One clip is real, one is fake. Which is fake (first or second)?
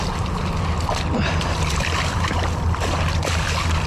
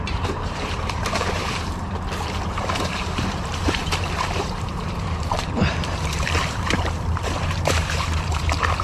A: second